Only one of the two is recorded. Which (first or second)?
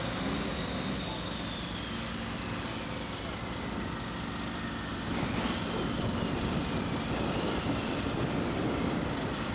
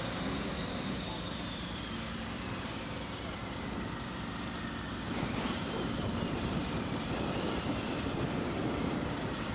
first